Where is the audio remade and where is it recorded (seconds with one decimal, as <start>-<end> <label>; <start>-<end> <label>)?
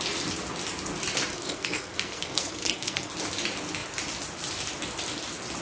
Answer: 0.0-1.3 recorded; 1.3-3.1 remade; 3.1-5.6 recorded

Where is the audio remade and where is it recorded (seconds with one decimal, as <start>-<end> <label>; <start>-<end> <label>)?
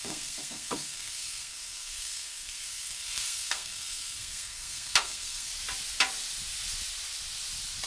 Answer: 0.0-5.5 remade; 5.5-7.9 recorded